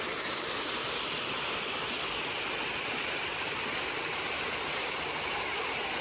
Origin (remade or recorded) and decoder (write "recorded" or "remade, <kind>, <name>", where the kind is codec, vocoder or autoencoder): recorded